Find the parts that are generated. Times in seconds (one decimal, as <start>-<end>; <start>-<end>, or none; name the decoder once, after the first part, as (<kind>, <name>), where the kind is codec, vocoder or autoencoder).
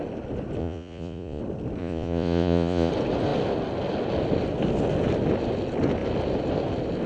0.6-1.4 (vocoder, Vocos); 1.8-2.9